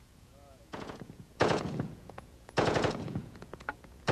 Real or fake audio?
fake